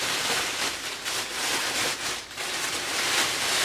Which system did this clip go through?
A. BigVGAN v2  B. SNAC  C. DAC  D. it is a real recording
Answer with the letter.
A